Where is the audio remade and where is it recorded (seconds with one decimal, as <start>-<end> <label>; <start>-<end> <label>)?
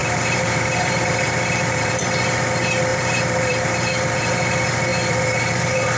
0.0-1.9 remade; 1.9-2.9 recorded; 2.9-4.3 remade; 4.3-4.9 recorded; 4.9-6.0 remade